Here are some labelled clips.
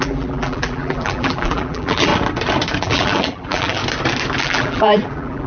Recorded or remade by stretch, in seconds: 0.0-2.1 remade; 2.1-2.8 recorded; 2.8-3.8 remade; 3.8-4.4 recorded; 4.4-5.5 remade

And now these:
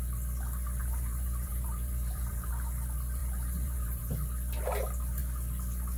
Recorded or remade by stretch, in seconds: 0.0-0.8 recorded; 0.8-2.5 remade; 2.5-3.2 recorded; 3.2-4.1 remade; 4.1-6.0 recorded

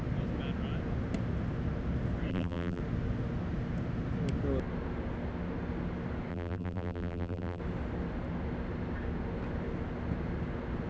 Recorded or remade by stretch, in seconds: 0.0-2.3 recorded; 2.3-2.8 remade; 2.8-6.3 recorded; 6.3-7.6 remade; 7.6-10.9 recorded